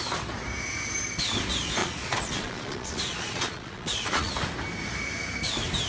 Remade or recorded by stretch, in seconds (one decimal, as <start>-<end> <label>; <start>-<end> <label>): 0.0-1.8 recorded; 1.8-4.3 remade; 4.3-5.9 recorded